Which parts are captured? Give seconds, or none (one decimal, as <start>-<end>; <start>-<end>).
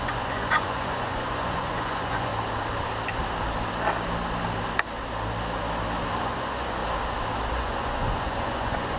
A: 2.3-6.2; 6.8-7.5